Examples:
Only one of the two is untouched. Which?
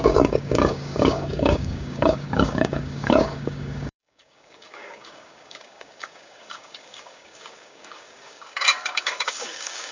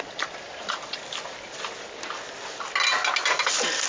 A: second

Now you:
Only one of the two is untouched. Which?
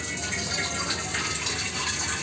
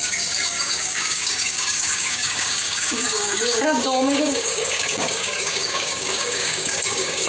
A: first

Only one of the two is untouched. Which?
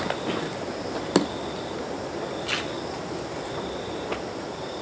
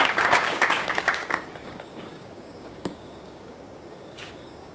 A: first